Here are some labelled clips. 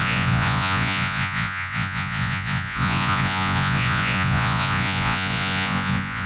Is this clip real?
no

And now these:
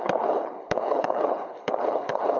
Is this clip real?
no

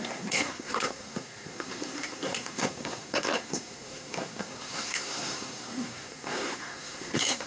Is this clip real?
no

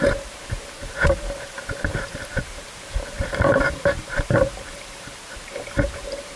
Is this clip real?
no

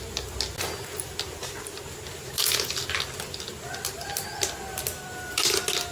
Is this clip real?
yes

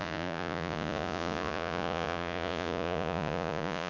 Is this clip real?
no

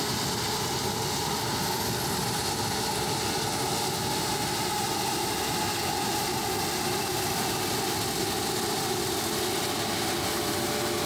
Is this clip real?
yes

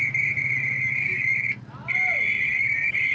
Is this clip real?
yes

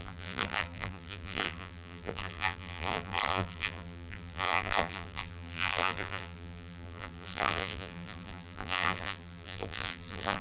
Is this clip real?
no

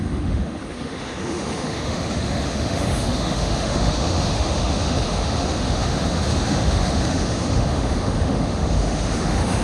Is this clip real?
no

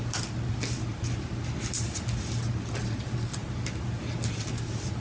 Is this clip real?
yes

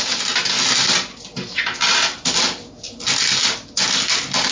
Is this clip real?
yes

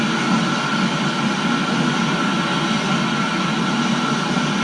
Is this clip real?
yes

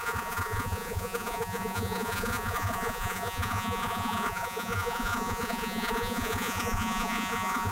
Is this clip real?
no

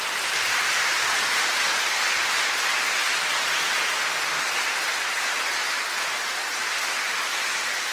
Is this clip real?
yes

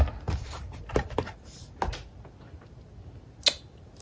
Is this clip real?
yes